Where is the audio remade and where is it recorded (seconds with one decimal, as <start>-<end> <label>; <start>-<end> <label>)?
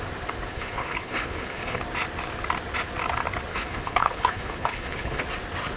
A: 0.0-0.5 recorded; 0.5-1.8 remade; 1.8-3.5 recorded; 3.5-5.2 remade; 5.2-5.8 recorded